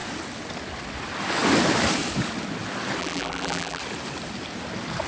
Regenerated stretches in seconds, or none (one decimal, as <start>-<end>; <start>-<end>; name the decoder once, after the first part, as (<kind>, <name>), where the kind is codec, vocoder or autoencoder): 3.0-3.8 (vocoder, BigVGAN v2)